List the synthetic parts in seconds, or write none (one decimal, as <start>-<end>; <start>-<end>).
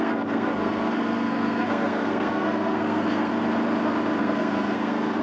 0.0-3.3; 4.2-5.2